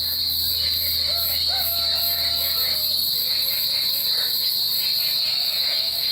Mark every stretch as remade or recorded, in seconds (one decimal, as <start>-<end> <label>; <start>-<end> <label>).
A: 0.0-5.3 recorded; 5.3-6.1 remade